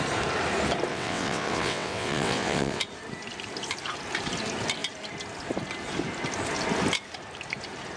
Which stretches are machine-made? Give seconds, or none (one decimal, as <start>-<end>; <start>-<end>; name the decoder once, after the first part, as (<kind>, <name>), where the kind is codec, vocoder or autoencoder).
0.9-2.8 (vocoder, WaveNeXt)